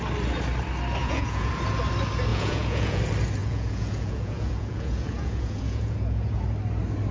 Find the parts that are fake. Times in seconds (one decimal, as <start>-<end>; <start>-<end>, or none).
1.0-1.5; 2.3-3.0; 3.4-6.4